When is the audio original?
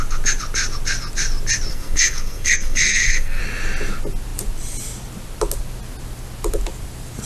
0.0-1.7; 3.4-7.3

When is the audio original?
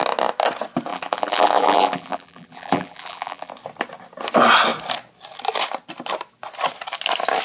0.0-0.9; 3.5-7.4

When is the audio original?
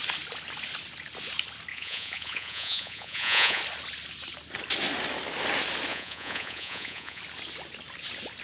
0.0-1.7; 3.6-5.9; 7.2-8.4